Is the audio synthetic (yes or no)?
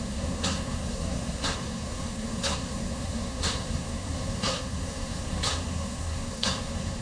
yes